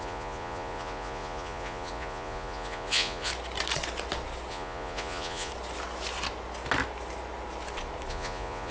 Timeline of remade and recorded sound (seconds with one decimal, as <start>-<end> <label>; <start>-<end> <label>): 0.0-3.3 remade; 3.3-4.5 recorded; 4.5-5.5 remade; 5.5-8.1 recorded; 8.1-8.7 remade